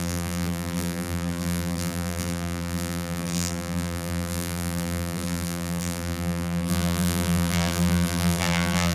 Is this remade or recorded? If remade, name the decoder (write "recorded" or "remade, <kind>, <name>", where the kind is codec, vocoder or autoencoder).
remade, vocoder, BigVGAN v2